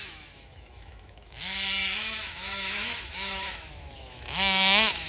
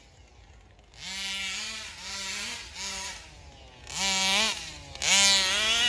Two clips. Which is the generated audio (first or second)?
first